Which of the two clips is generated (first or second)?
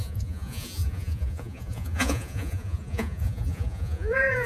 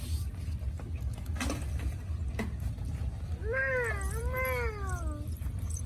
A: first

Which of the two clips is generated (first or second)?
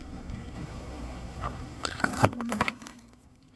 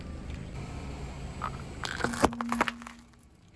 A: first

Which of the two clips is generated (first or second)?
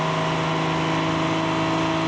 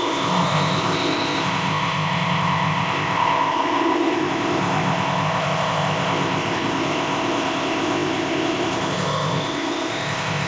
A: second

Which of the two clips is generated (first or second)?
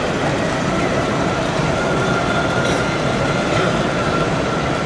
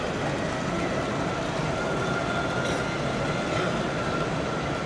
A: first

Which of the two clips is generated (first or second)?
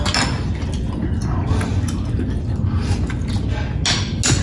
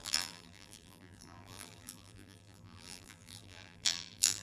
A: second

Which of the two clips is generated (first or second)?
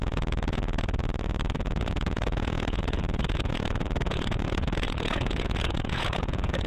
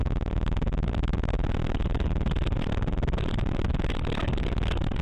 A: first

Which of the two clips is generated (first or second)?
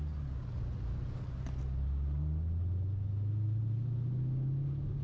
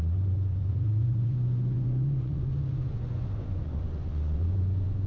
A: second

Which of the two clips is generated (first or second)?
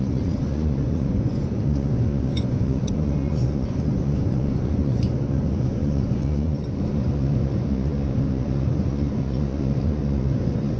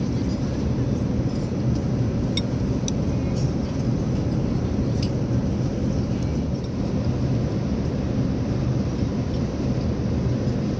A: first